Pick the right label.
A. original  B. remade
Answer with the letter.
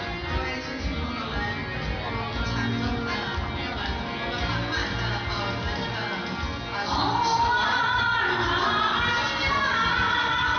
A